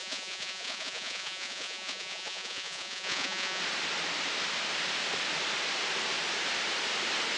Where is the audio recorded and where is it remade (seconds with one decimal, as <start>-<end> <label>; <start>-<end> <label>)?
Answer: 0.0-3.6 remade; 3.6-7.4 recorded